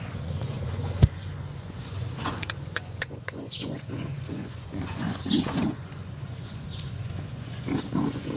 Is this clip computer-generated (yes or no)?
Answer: yes